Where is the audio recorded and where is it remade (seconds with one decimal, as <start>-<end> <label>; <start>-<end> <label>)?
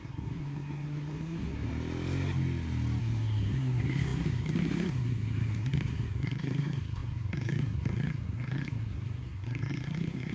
0.0-1.7 remade; 1.7-3.0 recorded; 3.0-10.3 remade